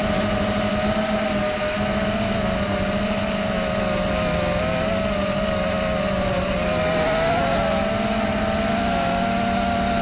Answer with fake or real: real